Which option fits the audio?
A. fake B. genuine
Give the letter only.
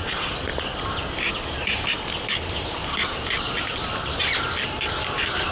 B